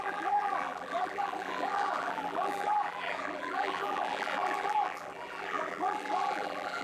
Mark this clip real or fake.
fake